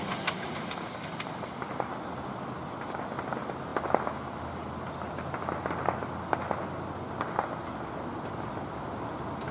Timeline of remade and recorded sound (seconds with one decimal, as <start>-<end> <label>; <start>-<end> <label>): 0.0-9.5 recorded